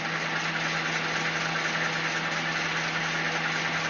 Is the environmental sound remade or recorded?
recorded